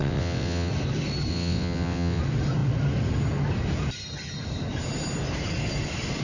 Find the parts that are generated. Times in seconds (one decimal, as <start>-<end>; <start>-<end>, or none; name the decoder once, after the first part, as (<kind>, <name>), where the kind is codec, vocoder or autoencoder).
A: 0.0-0.7 (vocoder, WaveNeXt); 1.3-2.2